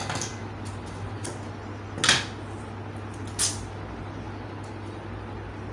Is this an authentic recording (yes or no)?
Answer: yes